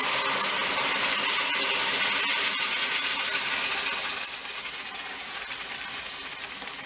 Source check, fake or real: real